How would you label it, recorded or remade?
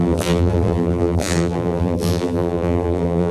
remade